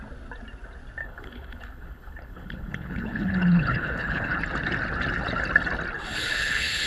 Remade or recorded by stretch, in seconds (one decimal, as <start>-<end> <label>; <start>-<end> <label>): 0.0-1.0 recorded; 1.0-4.4 remade; 4.4-6.1 recorded; 6.1-6.9 remade

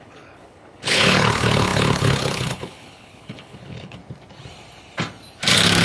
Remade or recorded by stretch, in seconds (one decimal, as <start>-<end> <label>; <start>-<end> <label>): 0.0-4.0 remade; 4.0-5.8 recorded

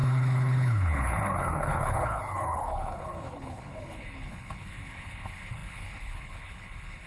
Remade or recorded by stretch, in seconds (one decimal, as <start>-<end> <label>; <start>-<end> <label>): 0.0-7.1 remade

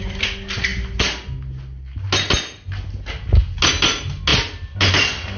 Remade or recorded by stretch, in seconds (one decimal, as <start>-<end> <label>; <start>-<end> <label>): 0.0-5.4 recorded